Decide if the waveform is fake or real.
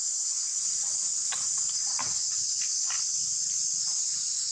real